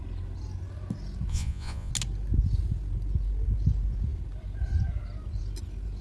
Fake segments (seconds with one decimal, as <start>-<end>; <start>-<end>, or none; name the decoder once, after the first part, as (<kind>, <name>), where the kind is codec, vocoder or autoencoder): 1.3-1.9 (vocoder, Vocos)